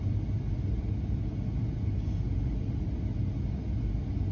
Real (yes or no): yes